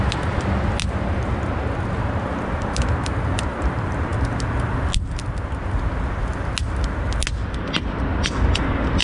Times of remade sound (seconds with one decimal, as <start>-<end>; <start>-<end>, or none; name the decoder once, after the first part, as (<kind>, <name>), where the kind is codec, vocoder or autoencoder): none